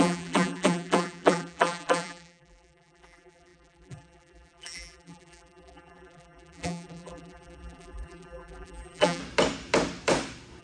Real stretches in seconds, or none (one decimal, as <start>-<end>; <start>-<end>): 9.2-10.6